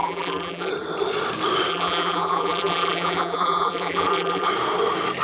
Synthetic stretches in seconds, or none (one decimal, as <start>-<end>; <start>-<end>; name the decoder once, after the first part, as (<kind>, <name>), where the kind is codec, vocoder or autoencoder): 0.0-0.7 (vocoder, BigVGAN v2); 1.7-4.5